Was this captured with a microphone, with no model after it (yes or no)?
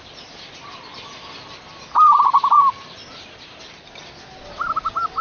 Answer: yes